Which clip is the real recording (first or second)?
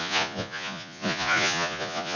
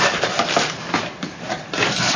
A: second